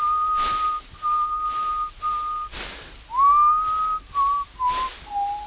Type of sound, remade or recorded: recorded